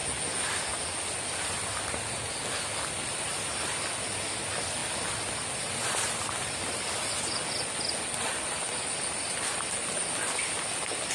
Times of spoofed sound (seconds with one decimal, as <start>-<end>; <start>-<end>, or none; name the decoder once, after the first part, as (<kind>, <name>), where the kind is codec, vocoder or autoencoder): none